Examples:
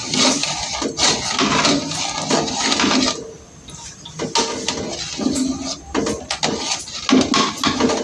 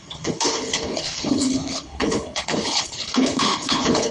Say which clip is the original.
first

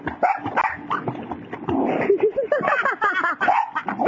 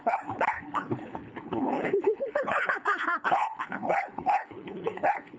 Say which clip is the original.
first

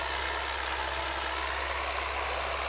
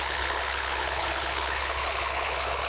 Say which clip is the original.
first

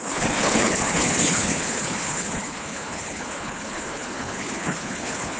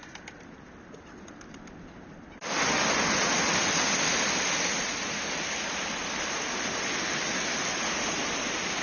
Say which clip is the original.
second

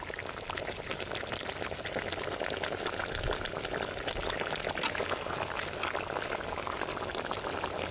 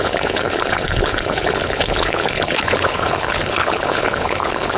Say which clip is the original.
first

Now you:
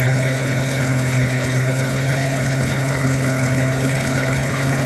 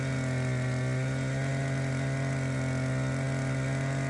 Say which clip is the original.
second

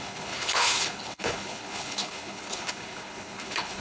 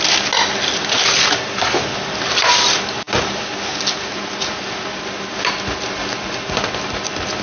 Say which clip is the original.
second